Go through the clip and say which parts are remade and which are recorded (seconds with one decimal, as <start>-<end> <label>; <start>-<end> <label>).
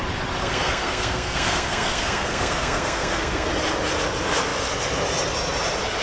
0.0-0.4 recorded; 0.4-3.5 remade; 3.5-6.0 recorded